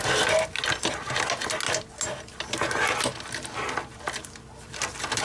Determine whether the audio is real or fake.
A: real